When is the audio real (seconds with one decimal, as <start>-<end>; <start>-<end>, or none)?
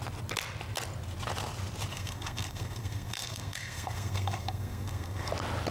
0.0-1.9; 5.3-5.7